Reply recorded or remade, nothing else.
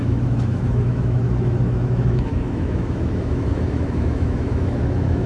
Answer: remade